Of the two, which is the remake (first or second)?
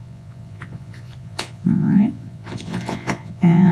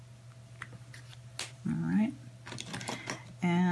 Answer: first